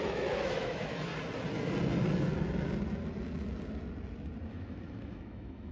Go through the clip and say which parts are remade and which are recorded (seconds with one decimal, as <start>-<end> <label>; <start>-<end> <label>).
0.0-1.1 remade; 1.1-4.5 recorded; 4.5-5.7 remade